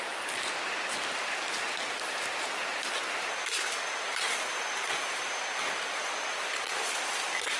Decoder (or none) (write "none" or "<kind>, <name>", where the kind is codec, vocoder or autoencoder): none